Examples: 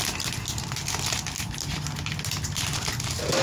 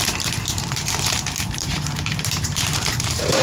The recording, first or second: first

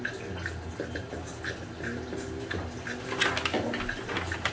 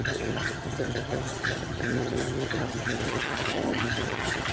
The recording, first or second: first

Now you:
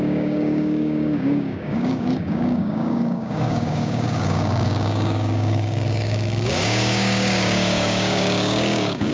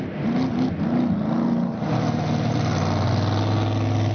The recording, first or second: second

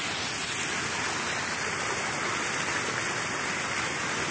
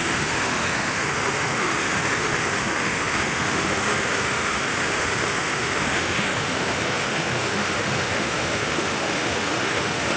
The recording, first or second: first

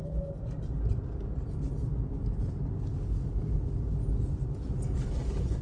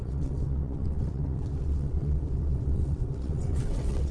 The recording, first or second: first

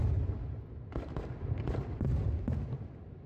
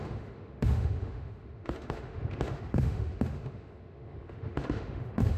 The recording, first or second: first